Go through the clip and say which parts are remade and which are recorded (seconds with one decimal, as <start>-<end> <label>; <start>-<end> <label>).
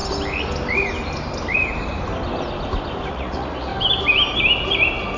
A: 0.0-3.1 recorded; 3.1-3.7 remade; 3.7-5.2 recorded